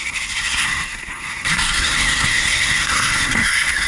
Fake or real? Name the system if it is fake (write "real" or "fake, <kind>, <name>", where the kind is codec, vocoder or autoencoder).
fake, codec, SNAC